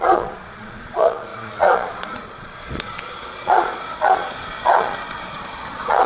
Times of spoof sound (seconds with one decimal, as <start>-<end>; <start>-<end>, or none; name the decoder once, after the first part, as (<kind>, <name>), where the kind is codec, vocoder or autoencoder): 0.0-6.1 (vocoder, Vocos)